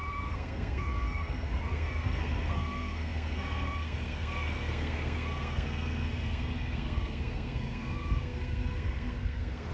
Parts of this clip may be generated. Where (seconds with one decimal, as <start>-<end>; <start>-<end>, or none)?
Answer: 0.0-9.7